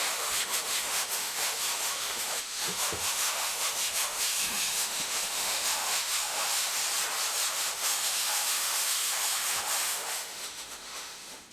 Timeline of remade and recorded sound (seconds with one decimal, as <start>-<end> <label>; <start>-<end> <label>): 0.0-6.8 remade; 6.8-7.5 recorded; 7.5-11.5 remade

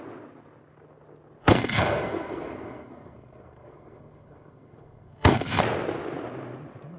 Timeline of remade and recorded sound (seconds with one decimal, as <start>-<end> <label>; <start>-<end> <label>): 0.0-1.4 recorded; 1.4-5.6 remade; 5.6-7.0 recorded